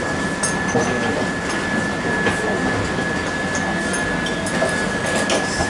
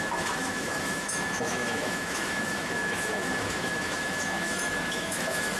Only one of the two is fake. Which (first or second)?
second